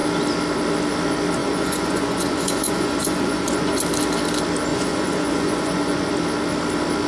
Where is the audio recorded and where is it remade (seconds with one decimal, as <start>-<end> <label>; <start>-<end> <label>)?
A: 0.0-1.4 recorded; 1.4-3.8 remade; 3.8-4.7 recorded; 4.7-6.1 remade; 6.1-7.1 recorded